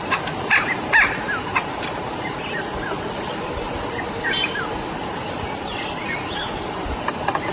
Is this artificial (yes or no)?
no